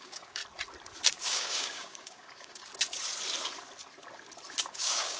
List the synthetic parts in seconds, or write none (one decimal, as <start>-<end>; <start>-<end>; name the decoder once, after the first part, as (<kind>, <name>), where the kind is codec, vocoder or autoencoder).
0.0-0.4 (codec, DAC); 1.1-2.7; 4.7-5.2